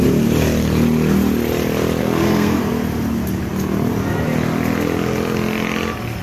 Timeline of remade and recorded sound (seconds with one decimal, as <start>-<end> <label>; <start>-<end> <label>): 0.0-2.0 recorded; 2.0-2.6 remade; 2.6-6.2 recorded